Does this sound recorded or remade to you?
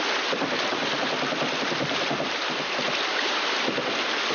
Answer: recorded